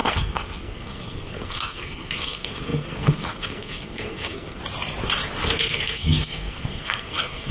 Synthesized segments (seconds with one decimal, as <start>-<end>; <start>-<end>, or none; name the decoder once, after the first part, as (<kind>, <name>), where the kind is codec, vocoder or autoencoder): 0.0-4.6 (codec, SNAC); 5.6-7.5